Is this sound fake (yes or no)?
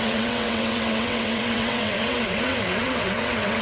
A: yes